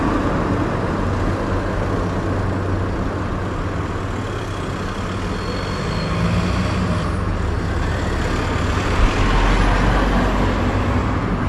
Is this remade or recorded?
recorded